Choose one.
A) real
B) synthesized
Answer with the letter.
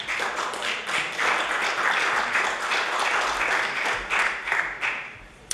B